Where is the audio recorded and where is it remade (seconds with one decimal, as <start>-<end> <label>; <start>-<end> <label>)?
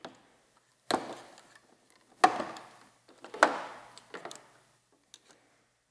0.0-5.9 recorded